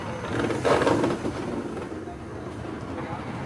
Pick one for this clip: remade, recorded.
recorded